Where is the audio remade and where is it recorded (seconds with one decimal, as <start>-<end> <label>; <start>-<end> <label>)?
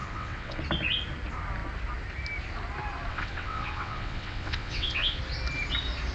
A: 0.0-0.6 remade; 0.6-3.1 recorded; 3.1-5.2 remade; 5.2-6.1 recorded